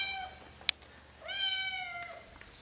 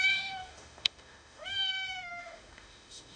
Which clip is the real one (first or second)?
first